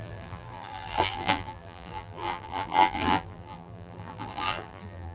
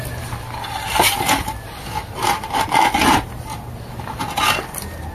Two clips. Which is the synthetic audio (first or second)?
first